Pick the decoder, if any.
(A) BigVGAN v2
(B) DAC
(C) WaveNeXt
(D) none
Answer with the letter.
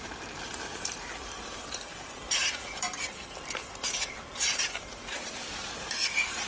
A